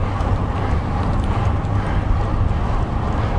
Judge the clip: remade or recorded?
recorded